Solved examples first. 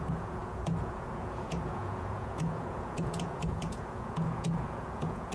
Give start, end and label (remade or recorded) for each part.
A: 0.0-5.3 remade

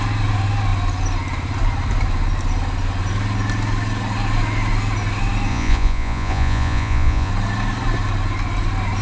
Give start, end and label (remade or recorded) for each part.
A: 0.0-5.5 recorded; 5.5-7.3 remade; 7.3-9.0 recorded

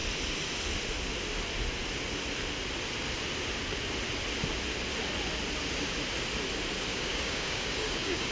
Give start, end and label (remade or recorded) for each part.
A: 0.0-6.9 recorded; 6.9-8.3 remade

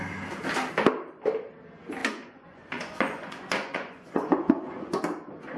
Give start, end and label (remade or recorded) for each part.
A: 0.0-2.0 recorded; 2.0-5.0 remade; 5.0-5.6 recorded